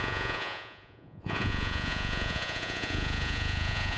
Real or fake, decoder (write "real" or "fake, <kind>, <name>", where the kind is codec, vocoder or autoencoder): fake, vocoder, Vocos